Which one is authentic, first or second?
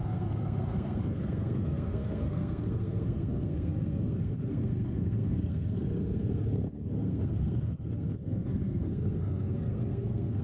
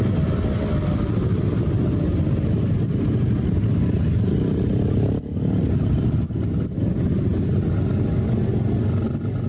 second